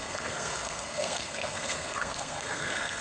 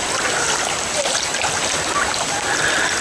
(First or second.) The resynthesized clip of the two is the first